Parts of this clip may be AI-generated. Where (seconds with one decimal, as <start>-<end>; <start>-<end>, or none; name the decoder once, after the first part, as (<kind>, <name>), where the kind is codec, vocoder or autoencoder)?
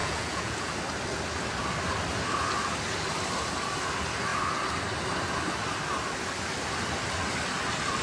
0.0-0.7 (vocoder, Vocos)